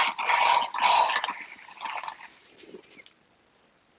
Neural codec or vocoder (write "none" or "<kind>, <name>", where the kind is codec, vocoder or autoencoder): none